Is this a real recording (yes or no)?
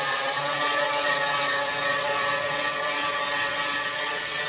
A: no